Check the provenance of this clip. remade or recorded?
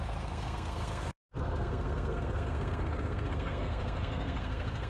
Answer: remade